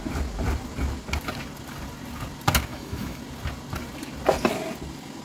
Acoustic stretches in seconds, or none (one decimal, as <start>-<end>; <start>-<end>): 0.0-2.7; 3.2-5.2